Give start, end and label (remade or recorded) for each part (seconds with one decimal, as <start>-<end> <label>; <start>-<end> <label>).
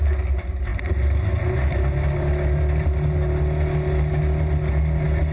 0.0-5.3 recorded